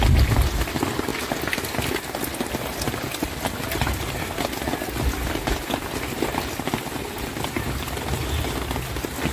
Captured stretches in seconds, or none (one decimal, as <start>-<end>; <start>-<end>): 0.0-9.3